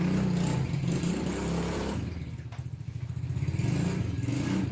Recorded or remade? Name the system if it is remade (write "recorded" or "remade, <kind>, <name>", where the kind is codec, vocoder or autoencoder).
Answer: recorded